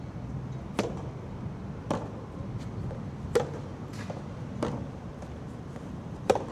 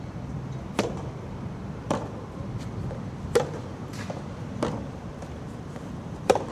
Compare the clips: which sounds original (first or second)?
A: first